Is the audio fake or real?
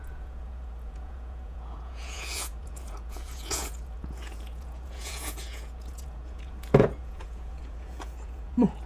fake